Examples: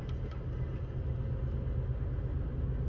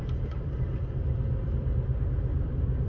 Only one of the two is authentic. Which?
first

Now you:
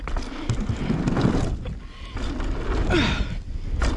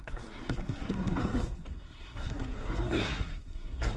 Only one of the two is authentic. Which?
first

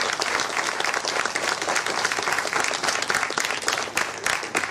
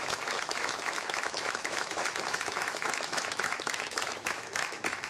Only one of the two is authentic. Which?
first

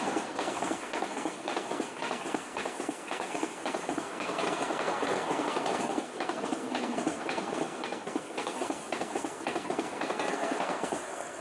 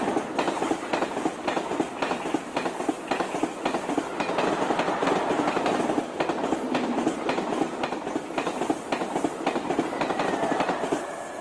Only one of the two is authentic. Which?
second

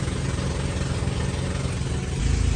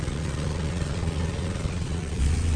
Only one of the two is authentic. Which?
first